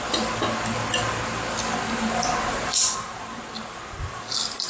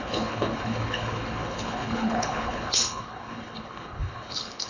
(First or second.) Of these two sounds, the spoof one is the second